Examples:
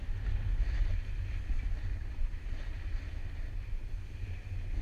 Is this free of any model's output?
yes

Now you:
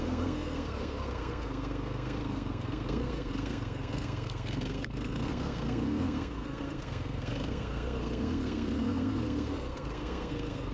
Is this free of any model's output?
no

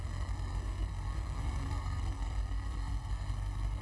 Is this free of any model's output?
no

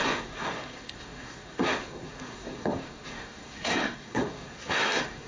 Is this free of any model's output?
no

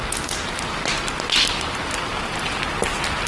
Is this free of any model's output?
yes